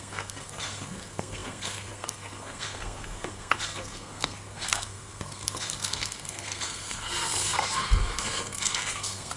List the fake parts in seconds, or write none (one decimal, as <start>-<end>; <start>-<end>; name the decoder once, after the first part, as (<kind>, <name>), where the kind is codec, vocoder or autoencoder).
0.0-9.4 (codec, SNAC)